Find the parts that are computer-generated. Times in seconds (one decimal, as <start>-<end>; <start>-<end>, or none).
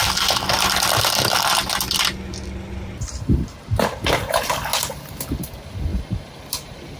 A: 5.9-7.0